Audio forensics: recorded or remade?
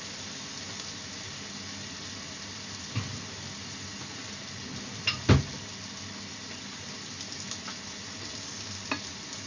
recorded